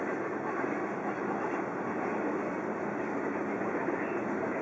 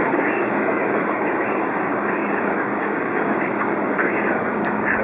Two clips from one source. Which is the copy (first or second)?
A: second